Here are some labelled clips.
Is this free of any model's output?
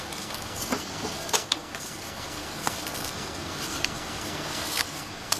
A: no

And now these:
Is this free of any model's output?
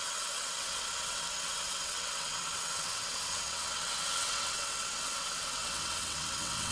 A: no